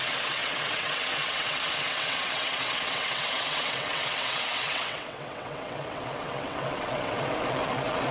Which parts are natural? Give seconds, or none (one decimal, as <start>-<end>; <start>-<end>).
none